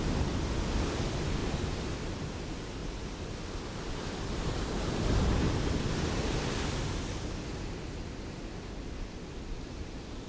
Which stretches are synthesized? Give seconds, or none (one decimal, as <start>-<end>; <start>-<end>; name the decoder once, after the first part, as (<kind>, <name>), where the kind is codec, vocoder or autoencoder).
1.4-2.0 (vocoder, BigVGAN v2); 2.8-5.9